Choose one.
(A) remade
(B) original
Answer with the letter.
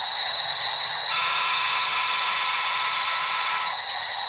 A